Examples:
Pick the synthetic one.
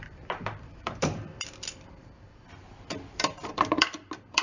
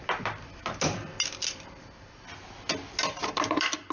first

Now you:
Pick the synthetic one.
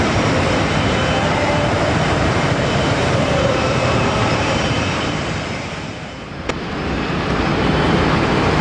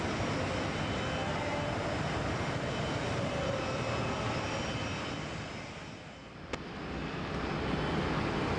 first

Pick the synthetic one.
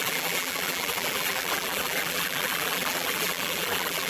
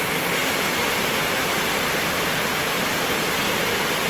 first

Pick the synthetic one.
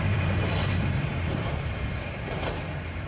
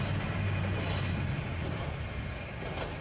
first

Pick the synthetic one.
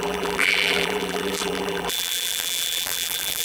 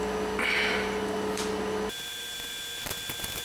first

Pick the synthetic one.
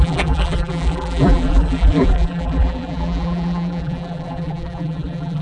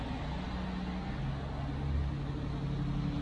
first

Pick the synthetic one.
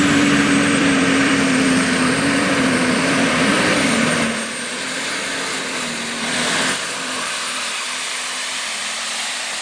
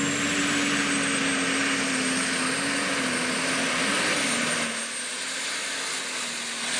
first